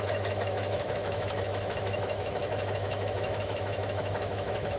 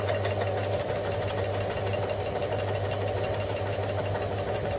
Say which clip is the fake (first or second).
first